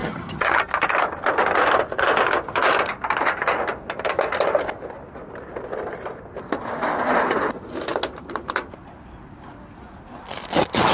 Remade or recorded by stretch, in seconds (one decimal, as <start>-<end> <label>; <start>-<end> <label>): 0.0-0.6 remade; 0.6-10.9 recorded